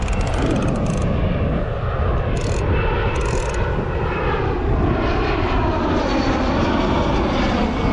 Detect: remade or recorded recorded